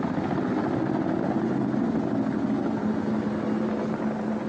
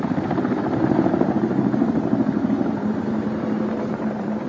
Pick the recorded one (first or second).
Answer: first